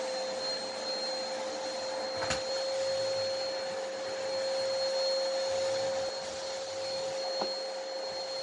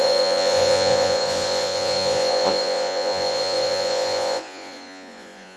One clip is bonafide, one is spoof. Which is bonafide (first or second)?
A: first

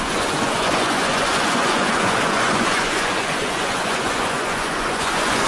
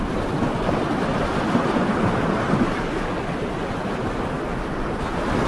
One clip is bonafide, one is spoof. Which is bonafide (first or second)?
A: second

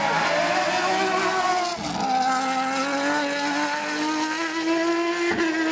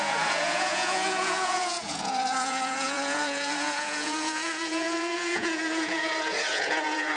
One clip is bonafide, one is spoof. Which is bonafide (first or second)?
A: first